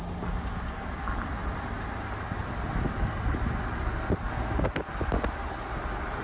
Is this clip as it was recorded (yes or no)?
yes